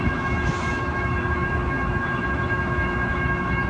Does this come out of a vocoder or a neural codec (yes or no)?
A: yes